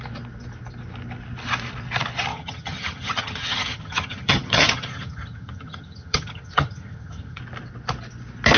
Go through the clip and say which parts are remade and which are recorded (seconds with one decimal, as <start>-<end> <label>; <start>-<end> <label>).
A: 0.0-2.3 recorded; 2.3-7.4 remade; 7.4-8.6 recorded